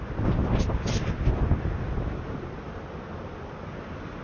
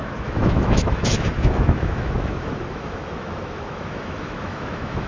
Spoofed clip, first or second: second